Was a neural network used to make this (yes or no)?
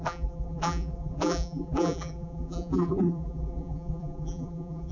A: yes